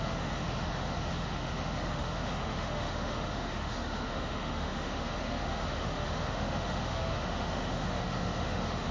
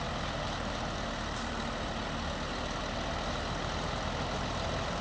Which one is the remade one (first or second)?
first